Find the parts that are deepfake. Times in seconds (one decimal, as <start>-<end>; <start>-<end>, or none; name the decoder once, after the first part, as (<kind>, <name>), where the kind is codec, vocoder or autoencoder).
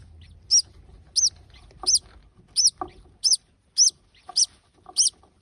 none